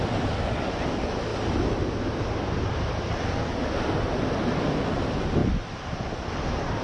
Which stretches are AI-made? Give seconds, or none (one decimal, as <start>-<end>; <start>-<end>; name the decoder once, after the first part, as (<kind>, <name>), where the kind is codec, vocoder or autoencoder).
none